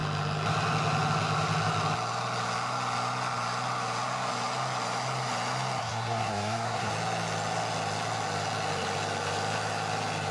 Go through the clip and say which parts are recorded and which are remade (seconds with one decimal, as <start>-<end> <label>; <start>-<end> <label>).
0.0-5.8 recorded; 5.8-6.9 remade; 6.9-10.3 recorded